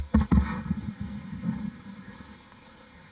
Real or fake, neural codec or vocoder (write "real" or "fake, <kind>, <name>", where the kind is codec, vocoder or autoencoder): fake, codec, SNAC